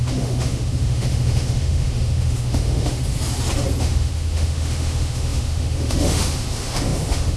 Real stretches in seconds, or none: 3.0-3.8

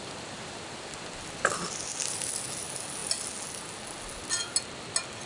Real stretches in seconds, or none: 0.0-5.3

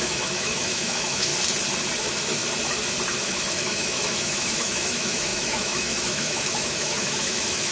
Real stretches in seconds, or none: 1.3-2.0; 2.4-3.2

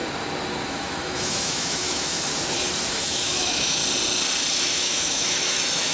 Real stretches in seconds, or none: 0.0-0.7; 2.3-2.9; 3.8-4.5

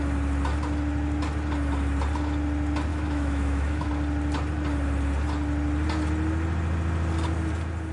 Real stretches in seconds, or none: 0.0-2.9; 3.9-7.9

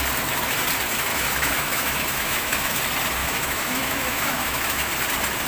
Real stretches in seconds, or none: 0.0-1.1; 2.8-3.2; 4.9-5.5

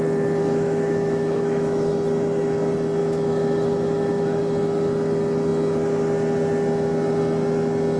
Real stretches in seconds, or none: 0.0-0.4; 1.9-3.0; 4.4-8.0